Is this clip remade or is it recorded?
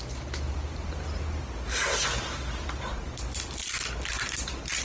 recorded